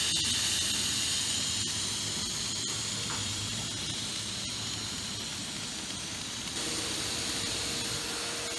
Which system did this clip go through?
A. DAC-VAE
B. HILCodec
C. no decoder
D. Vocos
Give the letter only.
C